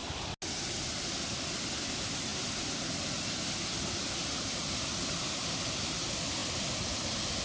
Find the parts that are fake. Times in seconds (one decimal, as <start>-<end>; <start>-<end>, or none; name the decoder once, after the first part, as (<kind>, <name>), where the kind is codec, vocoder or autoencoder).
none